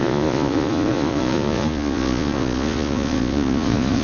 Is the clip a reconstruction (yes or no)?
yes